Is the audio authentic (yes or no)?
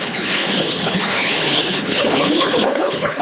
no